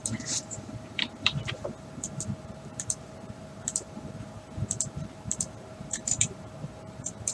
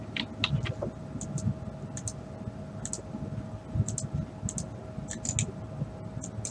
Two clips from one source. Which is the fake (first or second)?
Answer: first